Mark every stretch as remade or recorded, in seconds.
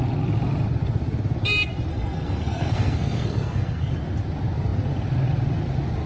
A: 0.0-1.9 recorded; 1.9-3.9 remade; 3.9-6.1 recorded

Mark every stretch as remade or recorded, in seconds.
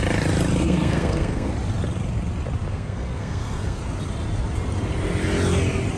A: 0.0-0.6 recorded; 0.6-1.5 remade; 1.5-2.7 recorded; 2.7-3.8 remade; 3.8-6.0 recorded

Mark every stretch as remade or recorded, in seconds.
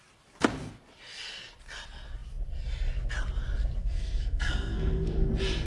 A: 0.0-3.8 recorded; 3.8-5.3 remade; 5.3-5.7 recorded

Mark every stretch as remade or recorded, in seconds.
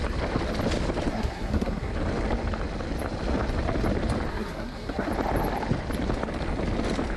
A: 0.0-1.1 recorded; 1.1-1.9 remade; 1.9-4.3 recorded; 4.3-5.1 remade; 5.1-7.2 recorded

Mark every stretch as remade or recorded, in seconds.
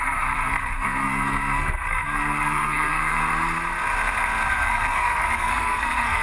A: 0.0-3.2 remade; 3.2-4.5 recorded; 4.5-6.2 remade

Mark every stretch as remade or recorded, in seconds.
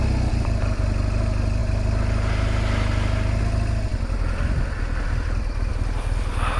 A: 0.0-6.6 recorded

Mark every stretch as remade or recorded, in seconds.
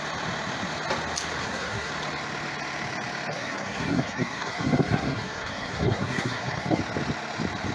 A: 0.0-1.4 recorded; 1.4-1.9 remade; 1.9-3.3 recorded; 3.3-6.8 remade; 6.8-7.7 recorded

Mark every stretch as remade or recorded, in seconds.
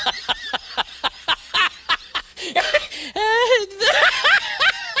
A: 0.0-2.2 recorded; 2.2-2.9 remade; 2.9-5.0 recorded